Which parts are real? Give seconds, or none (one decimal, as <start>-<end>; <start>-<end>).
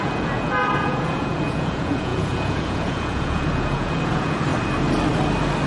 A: 4.5-5.7